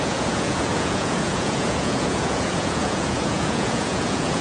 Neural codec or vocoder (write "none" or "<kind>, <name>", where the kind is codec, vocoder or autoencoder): vocoder, Vocos